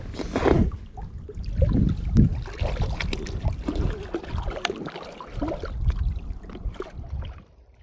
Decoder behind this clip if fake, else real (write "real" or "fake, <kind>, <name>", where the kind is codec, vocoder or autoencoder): real